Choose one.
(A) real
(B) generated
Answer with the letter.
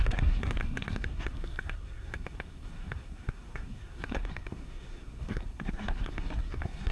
B